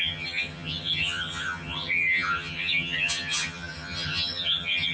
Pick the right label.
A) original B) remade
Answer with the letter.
B